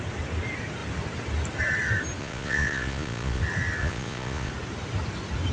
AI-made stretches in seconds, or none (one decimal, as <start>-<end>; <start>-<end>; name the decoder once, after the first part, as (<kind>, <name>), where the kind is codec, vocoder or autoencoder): 2.2-3.4 (vocoder, Vocos); 3.8-4.5